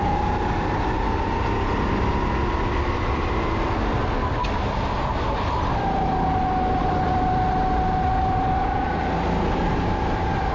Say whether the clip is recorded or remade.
recorded